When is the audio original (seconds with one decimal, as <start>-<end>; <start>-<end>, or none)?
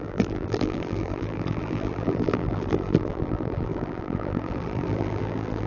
none